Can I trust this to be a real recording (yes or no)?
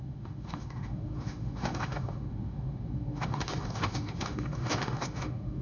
no